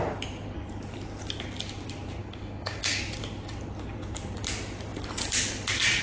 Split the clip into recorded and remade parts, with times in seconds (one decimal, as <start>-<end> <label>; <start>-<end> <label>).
0.0-2.2 recorded; 2.2-3.0 remade; 3.0-6.0 recorded